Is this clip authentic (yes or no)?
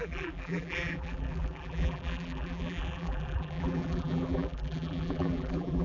no